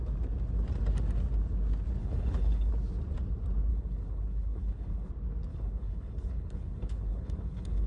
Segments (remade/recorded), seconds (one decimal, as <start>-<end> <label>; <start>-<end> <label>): 0.0-2.0 recorded; 2.0-2.7 remade; 2.7-3.7 recorded; 3.7-5.1 remade; 5.1-5.5 recorded; 5.5-7.9 remade